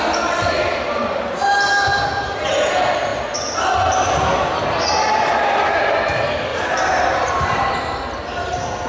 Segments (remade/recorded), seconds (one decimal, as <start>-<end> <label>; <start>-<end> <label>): 0.0-0.4 recorded; 0.4-2.7 remade; 2.7-6.5 recorded; 6.5-8.0 remade; 8.0-8.9 recorded